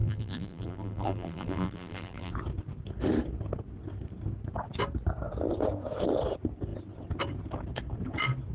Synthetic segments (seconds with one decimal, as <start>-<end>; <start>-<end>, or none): 0.0-2.3